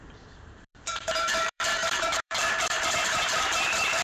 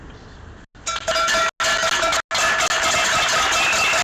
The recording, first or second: second